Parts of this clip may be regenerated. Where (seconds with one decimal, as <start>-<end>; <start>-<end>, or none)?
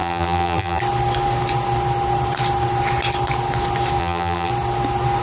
0.0-0.8; 4.0-4.5